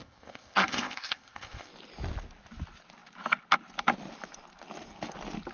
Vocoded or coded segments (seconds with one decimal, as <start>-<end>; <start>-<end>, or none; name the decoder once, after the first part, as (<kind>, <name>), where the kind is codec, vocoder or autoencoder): 0.0-1.7 (codec, ZipCodec)